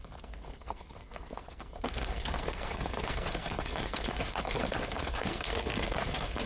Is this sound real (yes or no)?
no